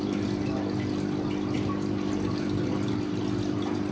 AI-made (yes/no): no